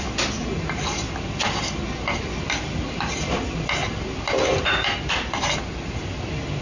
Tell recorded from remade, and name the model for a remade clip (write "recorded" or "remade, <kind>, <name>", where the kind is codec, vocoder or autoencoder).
recorded